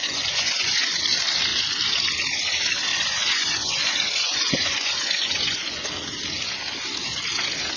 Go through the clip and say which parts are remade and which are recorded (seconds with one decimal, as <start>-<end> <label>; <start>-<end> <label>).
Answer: 0.0-1.0 remade; 1.0-2.9 recorded; 2.9-5.8 remade; 5.8-7.8 recorded